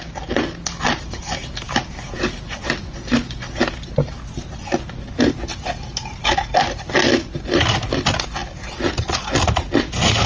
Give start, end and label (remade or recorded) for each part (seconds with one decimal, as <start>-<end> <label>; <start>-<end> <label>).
0.0-1.4 recorded; 1.4-2.6 remade; 2.6-5.5 recorded; 5.5-6.9 remade; 6.9-10.3 recorded